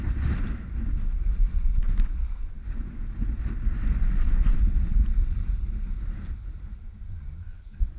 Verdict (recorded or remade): recorded